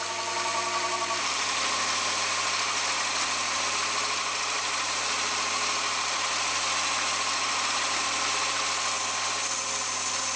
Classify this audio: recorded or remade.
recorded